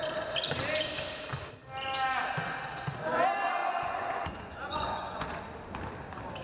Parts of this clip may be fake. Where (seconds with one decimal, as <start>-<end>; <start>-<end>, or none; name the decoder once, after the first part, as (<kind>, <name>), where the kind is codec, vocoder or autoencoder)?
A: 3.6-5.4 (vocoder, Vocos)